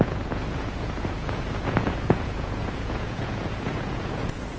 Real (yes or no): no